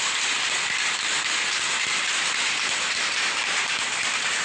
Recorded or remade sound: recorded